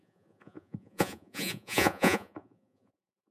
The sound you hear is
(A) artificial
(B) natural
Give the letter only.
A